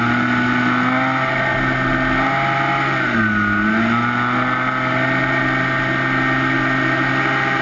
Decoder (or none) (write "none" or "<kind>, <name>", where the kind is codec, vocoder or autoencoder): none